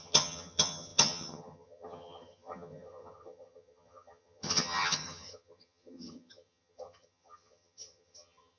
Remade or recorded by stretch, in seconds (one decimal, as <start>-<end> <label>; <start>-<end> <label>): 0.0-8.6 remade

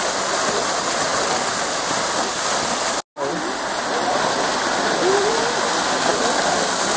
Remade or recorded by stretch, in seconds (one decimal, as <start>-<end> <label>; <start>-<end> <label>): 0.0-7.0 recorded

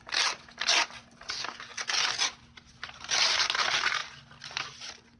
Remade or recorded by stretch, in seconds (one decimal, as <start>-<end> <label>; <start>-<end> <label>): 0.0-5.2 recorded

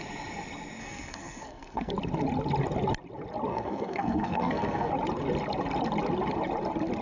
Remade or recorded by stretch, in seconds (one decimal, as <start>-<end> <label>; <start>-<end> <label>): 0.0-0.8 recorded; 0.8-1.9 remade; 1.9-3.5 recorded; 3.5-4.9 remade; 4.9-7.0 recorded

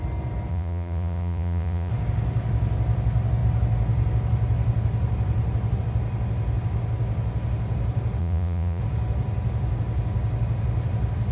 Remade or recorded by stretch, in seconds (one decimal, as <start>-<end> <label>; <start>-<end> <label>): 0.0-0.5 recorded; 0.5-1.9 remade; 1.9-8.2 recorded; 8.2-8.8 remade; 8.8-11.3 recorded

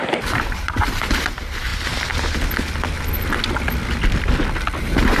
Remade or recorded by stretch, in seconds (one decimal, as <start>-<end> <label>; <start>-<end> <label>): 0.0-1.7 remade; 1.7-4.8 recorded; 4.8-5.2 remade

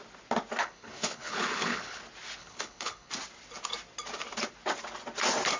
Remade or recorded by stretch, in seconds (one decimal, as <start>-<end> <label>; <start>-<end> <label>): 0.0-0.6 recorded; 0.6-2.0 remade; 2.0-2.4 recorded; 2.4-3.1 remade; 3.1-5.6 recorded

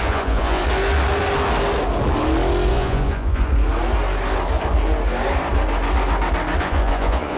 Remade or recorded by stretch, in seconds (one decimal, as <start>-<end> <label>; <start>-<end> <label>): 0.0-0.6 remade; 0.6-2.7 recorded; 2.7-3.5 remade; 3.5-6.6 recorded; 6.6-7.4 remade